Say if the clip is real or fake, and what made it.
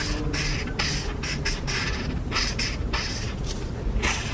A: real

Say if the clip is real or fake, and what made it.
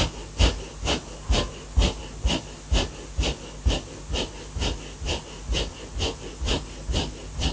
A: real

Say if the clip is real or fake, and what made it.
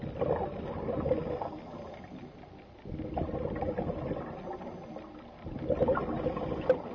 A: real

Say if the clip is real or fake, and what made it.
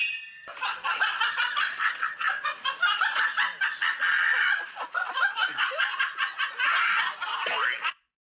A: real